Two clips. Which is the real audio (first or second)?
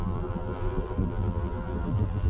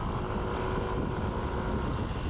second